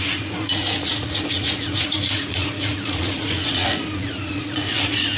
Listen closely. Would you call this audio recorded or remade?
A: remade